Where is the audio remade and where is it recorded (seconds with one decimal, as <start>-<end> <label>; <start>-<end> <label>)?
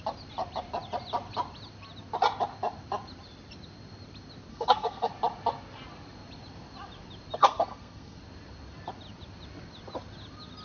0.0-4.5 recorded; 4.5-5.1 remade; 5.1-7.4 recorded; 7.4-8.2 remade; 8.2-10.6 recorded